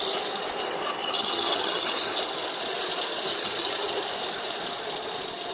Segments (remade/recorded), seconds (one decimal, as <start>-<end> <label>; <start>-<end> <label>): 0.0-1.0 recorded; 1.0-2.1 remade; 2.1-3.3 recorded; 3.3-3.8 remade; 3.8-5.5 recorded